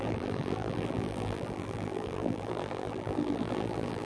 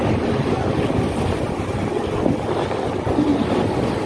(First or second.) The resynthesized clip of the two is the first